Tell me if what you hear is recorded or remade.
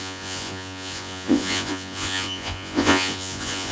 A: remade